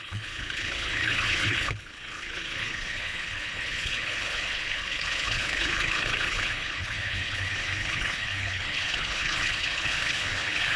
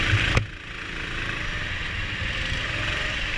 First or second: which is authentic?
second